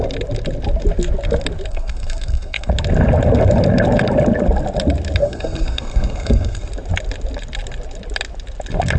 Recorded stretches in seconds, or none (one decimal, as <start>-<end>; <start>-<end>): 0.0-1.7; 2.7-5.2; 6.7-9.0